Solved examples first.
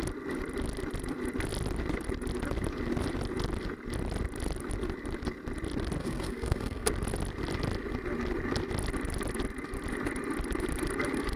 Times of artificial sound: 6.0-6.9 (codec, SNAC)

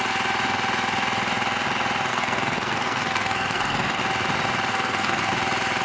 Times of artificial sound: 2.1-4.0 (codec, SNAC); 4.7-5.3

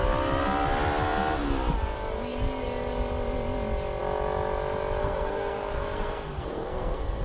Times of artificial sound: 5.0-7.2 (codec, SNAC)

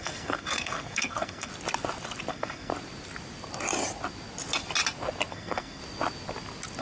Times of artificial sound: 0.0-1.5 (codec, SNAC); 2.3-2.7; 5.3-5.8

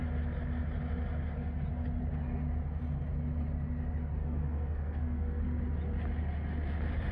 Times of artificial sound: 4.2-5.4 (codec, SNAC)

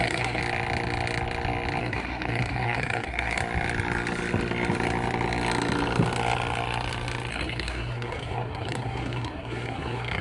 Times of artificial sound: 0.0-0.4 (codec, SNAC); 1.8-3.4; 7.3-10.2

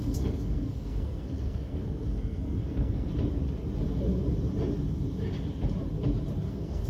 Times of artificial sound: 0.0-3.1 (codec, SNAC); 6.5-6.9